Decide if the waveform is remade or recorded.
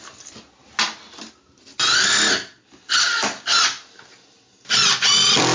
recorded